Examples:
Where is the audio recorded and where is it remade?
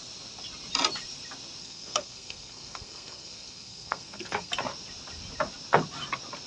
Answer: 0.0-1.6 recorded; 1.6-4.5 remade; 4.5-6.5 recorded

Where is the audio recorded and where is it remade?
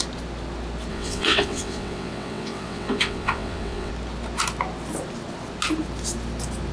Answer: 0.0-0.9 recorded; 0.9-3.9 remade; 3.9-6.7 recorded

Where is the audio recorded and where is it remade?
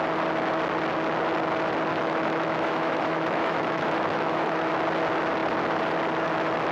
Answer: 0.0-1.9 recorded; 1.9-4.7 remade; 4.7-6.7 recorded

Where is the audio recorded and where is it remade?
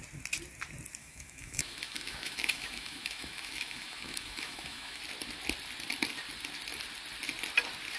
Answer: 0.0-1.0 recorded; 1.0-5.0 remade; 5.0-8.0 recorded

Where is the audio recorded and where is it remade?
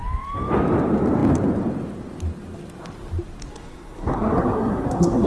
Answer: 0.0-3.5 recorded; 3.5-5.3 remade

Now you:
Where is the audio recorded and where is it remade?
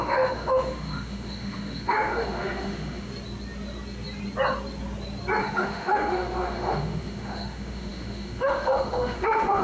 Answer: 0.0-3.1 remade; 3.1-5.4 recorded; 5.4-9.6 remade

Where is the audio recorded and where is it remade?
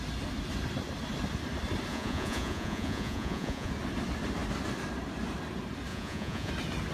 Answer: 0.0-1.9 recorded; 1.9-3.7 remade; 3.7-5.9 recorded; 5.9-6.5 remade; 6.5-6.9 recorded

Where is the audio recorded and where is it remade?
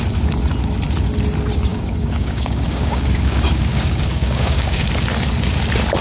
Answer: 0.0-1.7 recorded; 1.7-4.9 remade; 4.9-6.0 recorded